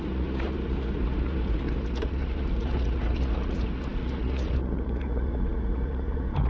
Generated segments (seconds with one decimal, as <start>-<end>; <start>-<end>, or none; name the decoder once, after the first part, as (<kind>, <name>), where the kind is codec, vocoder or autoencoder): 0.0-6.5 (vocoder, Vocos)